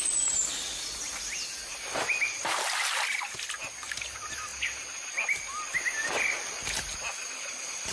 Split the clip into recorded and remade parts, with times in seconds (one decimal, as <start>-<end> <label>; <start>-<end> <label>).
0.0-7.9 recorded